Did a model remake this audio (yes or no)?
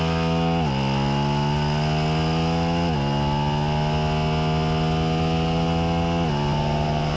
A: no